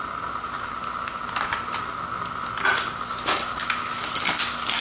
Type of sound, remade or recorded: recorded